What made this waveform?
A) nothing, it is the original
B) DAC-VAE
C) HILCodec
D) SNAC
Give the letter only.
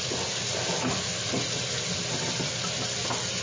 A